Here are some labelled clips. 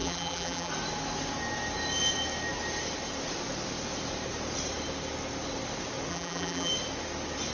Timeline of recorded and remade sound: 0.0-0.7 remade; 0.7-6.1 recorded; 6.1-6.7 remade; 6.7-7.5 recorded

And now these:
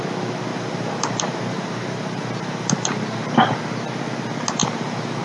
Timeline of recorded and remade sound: 0.0-0.5 recorded; 0.5-3.6 remade; 3.6-4.6 recorded; 4.6-5.2 remade

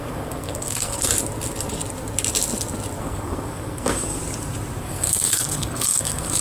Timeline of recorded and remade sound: 0.0-1.1 remade; 1.1-3.0 recorded; 3.0-4.2 remade; 4.2-4.8 recorded; 4.8-6.4 remade

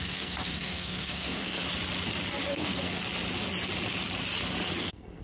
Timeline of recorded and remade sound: 0.0-1.6 remade; 1.6-2.5 recorded; 2.5-3.0 remade; 3.0-4.8 recorded; 4.8-5.2 remade

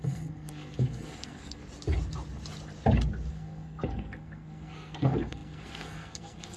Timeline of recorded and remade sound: 0.0-1.6 remade; 1.6-3.3 recorded; 3.3-6.6 remade

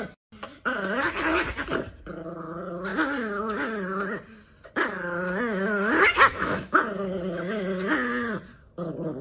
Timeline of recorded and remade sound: 0.0-6.3 recorded; 6.3-6.8 remade; 6.8-9.2 recorded